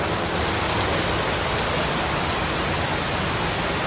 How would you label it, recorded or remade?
recorded